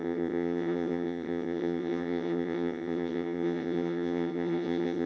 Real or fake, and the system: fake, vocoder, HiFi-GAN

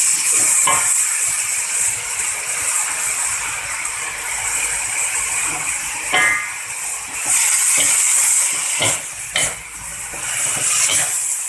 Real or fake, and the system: real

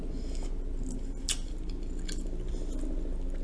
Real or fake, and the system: real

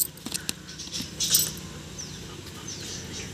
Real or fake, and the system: real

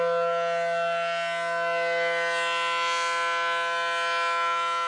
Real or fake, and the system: real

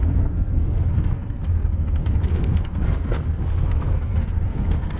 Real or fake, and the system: fake, codec, SNAC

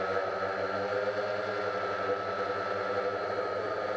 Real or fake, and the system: real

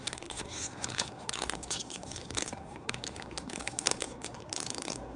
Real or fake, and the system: fake, codec, SNAC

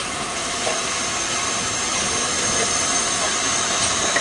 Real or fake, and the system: real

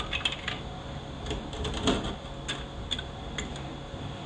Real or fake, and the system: real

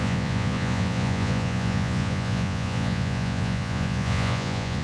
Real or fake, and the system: fake, vocoder, Vocos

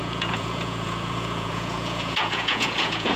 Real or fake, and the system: fake, vocoder, Vocos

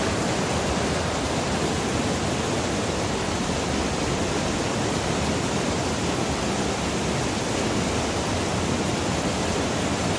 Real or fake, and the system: real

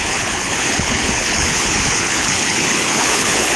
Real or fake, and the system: fake, codec, HILCodec